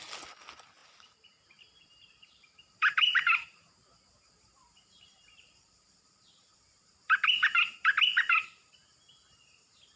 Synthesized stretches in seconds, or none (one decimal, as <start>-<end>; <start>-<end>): 0.8-3.7; 4.6-7.6